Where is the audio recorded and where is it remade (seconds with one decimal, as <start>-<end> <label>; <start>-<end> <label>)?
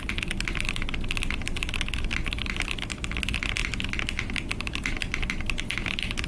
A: 0.0-6.3 recorded